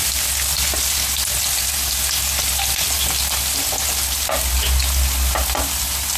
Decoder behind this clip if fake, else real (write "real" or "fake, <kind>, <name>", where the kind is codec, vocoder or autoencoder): real